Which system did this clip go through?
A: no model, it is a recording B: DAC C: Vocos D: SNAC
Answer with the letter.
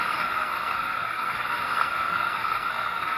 D